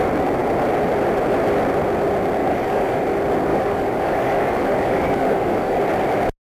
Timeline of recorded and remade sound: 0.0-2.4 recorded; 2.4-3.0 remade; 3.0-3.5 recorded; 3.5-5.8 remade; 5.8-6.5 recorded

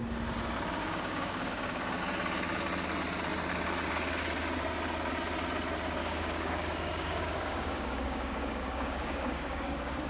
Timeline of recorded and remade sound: 0.0-0.8 recorded; 0.8-2.0 remade; 2.0-6.0 recorded; 6.0-10.1 remade